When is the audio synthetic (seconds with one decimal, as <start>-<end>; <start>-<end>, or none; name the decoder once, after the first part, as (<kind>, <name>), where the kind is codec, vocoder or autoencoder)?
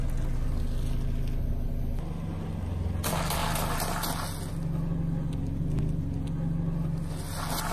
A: none